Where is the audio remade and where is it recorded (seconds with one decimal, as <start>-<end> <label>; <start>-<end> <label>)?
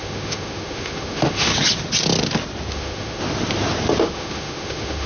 0.0-1.5 remade; 1.5-2.7 recorded; 2.7-3.2 remade; 3.2-4.0 recorded; 4.0-5.1 remade